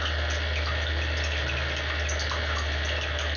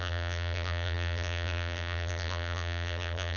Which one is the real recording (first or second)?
first